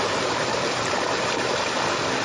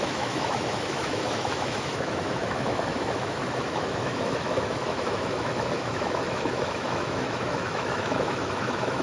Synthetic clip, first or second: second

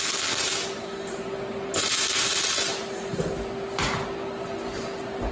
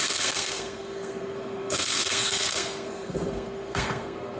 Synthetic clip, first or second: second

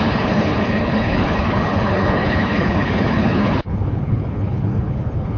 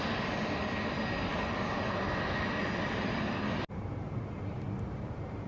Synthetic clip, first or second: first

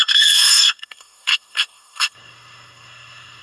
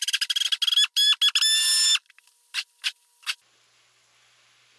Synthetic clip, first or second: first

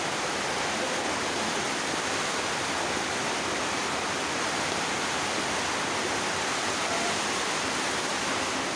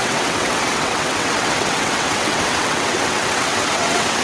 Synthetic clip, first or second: second